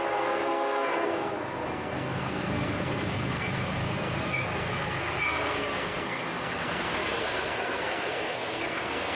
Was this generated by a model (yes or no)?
yes